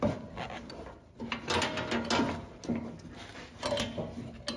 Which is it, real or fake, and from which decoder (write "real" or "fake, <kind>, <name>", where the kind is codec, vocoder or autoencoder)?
real